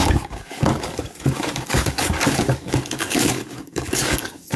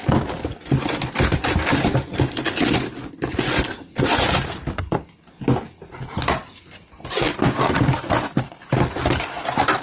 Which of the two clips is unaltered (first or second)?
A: second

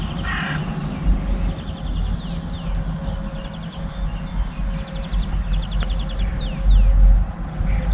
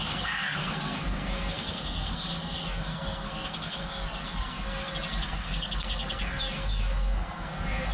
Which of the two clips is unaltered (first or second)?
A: first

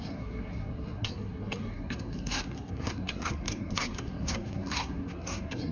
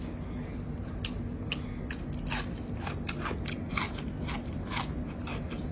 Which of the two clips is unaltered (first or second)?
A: second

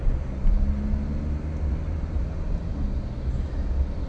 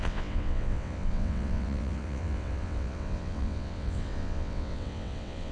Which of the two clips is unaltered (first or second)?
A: first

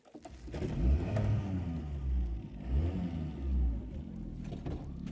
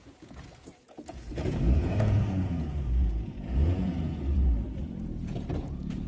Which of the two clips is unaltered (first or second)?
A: first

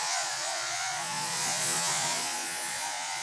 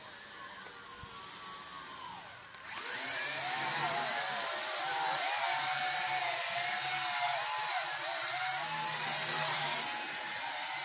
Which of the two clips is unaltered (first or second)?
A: second